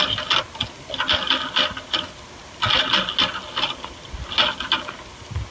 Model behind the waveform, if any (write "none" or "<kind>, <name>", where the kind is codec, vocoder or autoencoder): none